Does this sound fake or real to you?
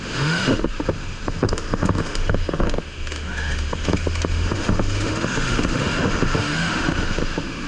fake